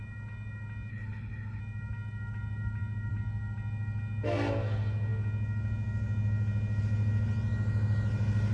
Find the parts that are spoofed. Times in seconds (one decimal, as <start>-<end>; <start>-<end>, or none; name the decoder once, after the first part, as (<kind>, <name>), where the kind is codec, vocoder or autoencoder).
0.9-1.6 (codec, HILCodec)